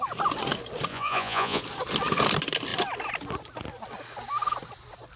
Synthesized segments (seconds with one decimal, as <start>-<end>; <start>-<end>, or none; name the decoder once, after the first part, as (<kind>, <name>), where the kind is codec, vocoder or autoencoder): 0.9-1.6 (vocoder, Vocos)